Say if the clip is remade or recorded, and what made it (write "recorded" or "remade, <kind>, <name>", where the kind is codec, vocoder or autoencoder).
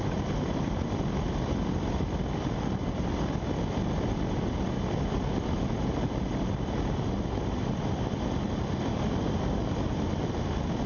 recorded